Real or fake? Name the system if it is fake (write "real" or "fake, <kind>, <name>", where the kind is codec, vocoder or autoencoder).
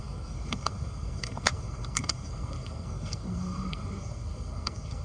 fake, codec, SNAC